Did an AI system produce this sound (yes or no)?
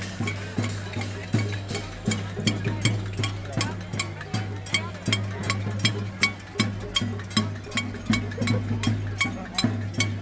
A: no